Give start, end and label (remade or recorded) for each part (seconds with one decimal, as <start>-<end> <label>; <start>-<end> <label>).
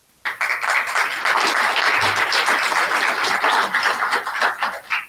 0.0-5.1 recorded